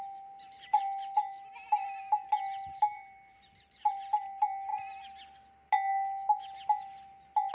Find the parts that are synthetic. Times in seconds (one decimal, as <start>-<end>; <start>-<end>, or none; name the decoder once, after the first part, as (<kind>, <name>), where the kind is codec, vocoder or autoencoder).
0.0-2.0 (vocoder, BigVGAN v2); 2.8-4.7